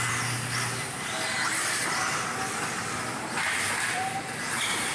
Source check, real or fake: real